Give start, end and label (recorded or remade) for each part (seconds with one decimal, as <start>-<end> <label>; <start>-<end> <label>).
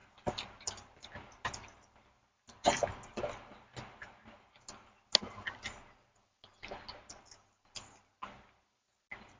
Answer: 0.0-9.4 recorded